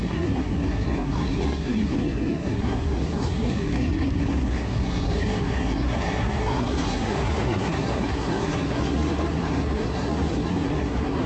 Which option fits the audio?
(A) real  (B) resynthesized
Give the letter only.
B